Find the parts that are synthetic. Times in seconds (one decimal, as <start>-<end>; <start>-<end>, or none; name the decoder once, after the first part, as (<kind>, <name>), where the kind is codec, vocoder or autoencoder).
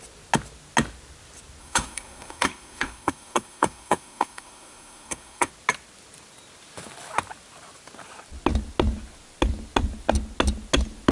1.6-5.5 (codec, SNAC)